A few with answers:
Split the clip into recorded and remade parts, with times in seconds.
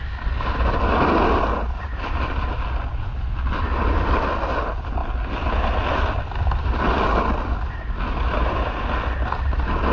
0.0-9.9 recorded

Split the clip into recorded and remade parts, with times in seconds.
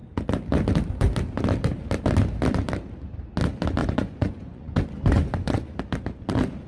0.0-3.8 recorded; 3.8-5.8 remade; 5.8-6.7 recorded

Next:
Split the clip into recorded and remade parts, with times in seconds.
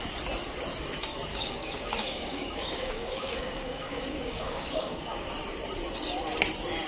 0.0-1.3 recorded; 1.3-5.3 remade; 5.3-6.9 recorded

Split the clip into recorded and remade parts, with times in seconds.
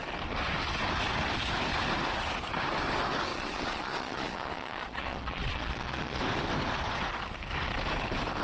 0.0-3.3 recorded; 3.3-6.2 remade; 6.2-8.4 recorded